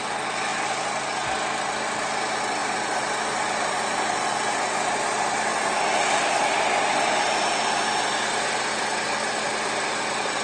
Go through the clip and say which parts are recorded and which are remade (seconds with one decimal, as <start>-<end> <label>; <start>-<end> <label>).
0.0-10.4 recorded